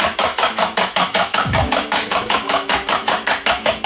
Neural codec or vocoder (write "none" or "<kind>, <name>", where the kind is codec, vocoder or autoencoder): autoencoder, DAC-VAE